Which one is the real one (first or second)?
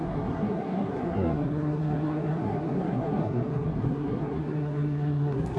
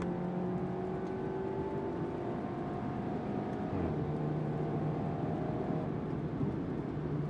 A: second